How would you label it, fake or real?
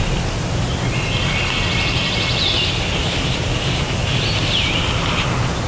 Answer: real